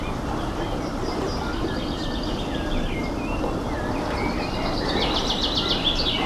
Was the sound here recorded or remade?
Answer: recorded